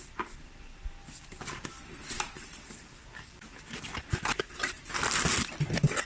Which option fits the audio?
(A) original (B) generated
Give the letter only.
B